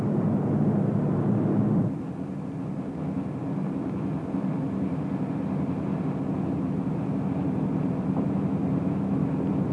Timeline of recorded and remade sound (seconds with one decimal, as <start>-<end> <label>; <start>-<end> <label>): 0.0-9.7 recorded